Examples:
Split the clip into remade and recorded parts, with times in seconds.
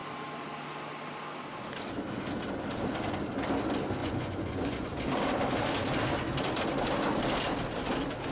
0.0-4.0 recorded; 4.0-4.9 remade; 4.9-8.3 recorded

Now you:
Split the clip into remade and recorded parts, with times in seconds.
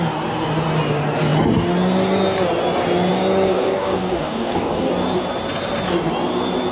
0.0-3.5 recorded; 3.5-4.9 remade; 4.9-6.7 recorded